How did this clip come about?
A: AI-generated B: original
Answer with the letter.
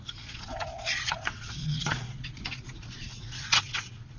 A